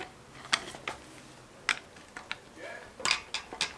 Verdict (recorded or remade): recorded